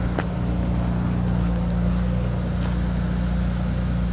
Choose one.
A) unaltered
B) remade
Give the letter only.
A